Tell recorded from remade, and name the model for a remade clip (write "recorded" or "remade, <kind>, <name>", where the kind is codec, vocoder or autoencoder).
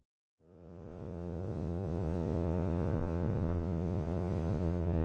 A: remade, vocoder, Vocos